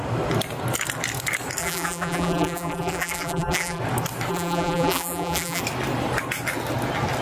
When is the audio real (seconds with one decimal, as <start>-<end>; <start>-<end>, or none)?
0.0-1.6; 3.8-4.3; 5.6-7.2